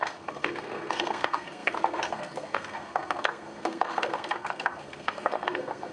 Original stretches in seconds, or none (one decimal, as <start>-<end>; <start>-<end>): none